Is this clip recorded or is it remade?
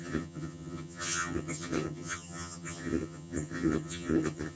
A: remade